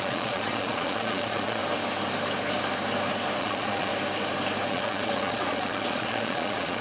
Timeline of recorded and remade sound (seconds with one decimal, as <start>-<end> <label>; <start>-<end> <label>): 0.0-1.6 remade; 1.6-3.4 recorded; 3.4-3.9 remade; 3.9-4.7 recorded; 4.7-6.8 remade